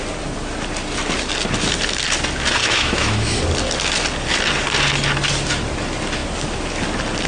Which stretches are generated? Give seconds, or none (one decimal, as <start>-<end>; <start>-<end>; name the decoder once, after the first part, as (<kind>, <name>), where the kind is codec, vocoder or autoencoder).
2.6-3.4 (autoencoder, DAC-VAE)